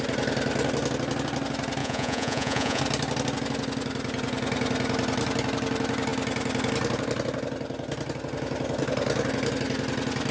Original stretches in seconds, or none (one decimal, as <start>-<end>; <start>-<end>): 0.0-1.8; 2.8-10.3